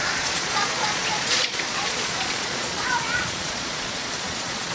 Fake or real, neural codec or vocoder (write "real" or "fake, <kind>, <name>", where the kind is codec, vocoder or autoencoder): fake, vocoder, Vocos